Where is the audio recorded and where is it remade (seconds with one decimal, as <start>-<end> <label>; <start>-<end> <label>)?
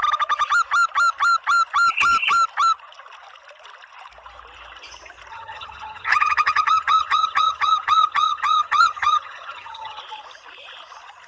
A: 0.0-5.3 recorded; 5.3-10.0 remade; 10.0-11.3 recorded